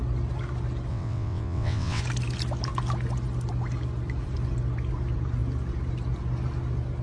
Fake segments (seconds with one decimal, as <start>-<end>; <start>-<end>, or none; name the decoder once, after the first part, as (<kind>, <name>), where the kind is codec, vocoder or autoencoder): 0.9-2.0 (vocoder, WaveNeXt)